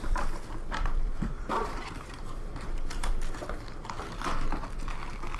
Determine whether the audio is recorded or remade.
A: remade